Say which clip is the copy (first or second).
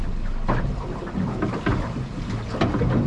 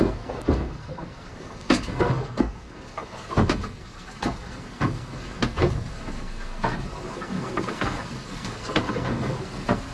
second